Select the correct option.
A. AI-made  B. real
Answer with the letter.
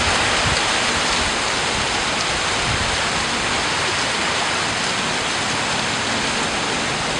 B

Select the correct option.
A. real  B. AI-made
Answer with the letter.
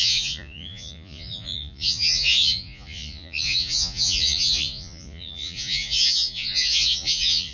B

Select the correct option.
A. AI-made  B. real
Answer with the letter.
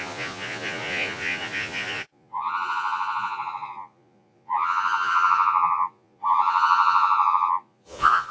A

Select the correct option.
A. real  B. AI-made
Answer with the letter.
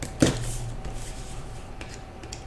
A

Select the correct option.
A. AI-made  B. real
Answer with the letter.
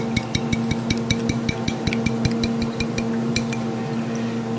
B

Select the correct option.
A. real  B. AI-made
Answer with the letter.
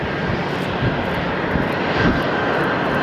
A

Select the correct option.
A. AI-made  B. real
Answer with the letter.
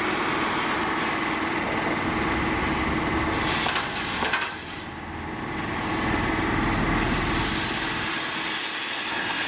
B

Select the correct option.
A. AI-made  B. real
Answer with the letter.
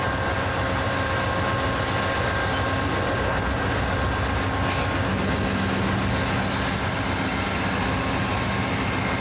B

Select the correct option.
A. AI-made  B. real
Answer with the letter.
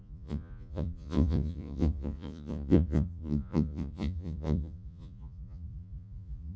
A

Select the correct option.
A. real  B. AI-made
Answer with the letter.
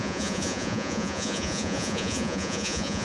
B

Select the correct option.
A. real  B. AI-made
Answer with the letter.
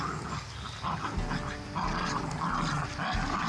A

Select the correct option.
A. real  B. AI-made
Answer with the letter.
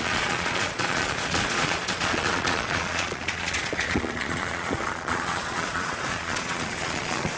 B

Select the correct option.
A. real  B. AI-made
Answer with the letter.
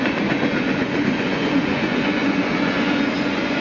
B